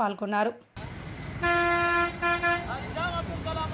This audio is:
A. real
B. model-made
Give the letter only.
A